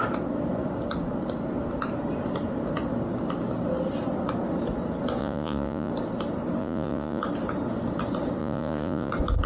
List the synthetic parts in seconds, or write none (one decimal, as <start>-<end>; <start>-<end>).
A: 5.2-5.9; 6.6-7.2; 8.4-9.1